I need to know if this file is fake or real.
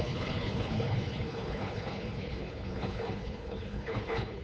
fake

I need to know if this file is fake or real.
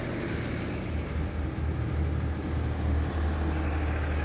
real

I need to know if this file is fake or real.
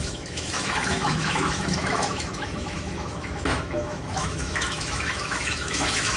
fake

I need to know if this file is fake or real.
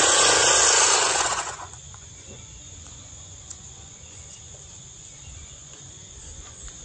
fake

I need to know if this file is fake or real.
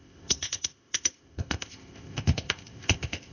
fake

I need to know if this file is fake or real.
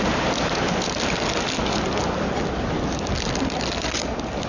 real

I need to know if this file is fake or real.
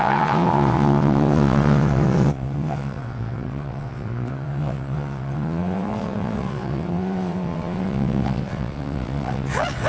fake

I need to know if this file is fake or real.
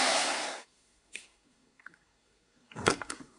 fake